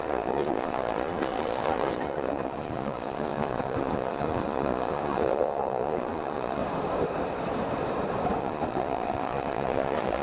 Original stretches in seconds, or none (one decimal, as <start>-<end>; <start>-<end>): 6.6-8.4